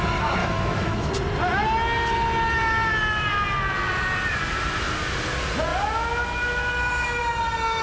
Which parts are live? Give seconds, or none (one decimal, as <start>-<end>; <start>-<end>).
0.0-0.4; 1.1-7.8